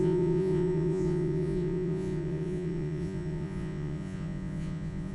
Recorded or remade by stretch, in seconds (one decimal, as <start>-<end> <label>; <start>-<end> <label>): 0.0-5.1 remade